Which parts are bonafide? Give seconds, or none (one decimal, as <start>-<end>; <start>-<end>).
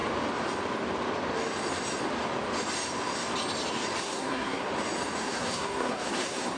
0.0-4.0; 4.7-5.2